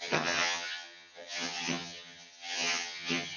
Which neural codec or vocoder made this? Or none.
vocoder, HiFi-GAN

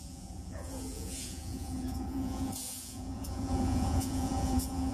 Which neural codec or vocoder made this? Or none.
vocoder, Vocos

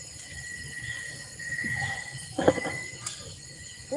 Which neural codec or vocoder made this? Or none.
vocoder, Vocos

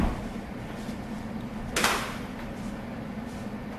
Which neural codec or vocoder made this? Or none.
none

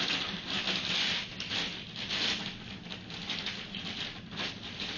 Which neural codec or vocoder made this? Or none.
none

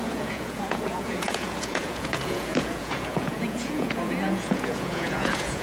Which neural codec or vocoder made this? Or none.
vocoder, Vocos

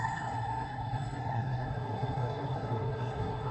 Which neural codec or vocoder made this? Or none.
codec, SNAC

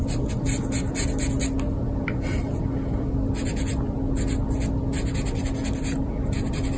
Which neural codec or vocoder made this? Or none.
none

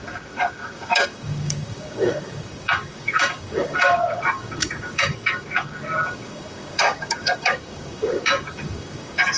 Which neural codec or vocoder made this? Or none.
codec, DAC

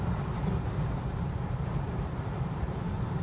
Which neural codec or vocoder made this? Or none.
vocoder, BigVGAN v2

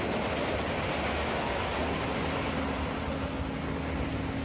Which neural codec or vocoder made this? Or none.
none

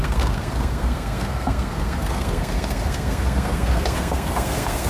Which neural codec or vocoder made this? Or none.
codec, SNAC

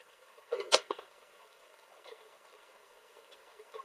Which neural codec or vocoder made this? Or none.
codec, SNAC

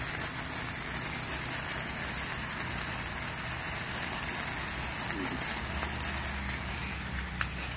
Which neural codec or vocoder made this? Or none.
none